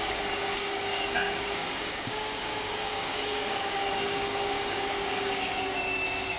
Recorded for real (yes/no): no